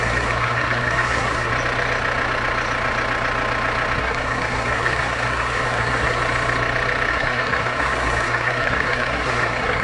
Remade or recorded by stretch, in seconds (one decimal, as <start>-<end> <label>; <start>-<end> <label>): 0.0-1.5 remade; 1.5-4.0 recorded; 4.0-6.2 remade; 6.2-7.1 recorded; 7.1-9.8 remade